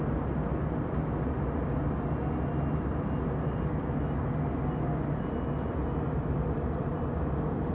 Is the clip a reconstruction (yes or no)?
no